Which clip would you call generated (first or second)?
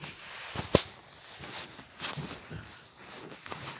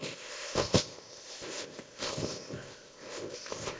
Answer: second